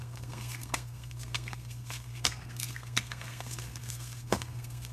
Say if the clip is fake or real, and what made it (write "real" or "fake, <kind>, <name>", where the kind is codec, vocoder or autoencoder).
fake, codec, SNAC